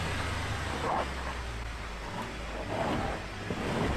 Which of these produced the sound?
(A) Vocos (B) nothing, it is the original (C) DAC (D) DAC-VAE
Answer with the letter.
B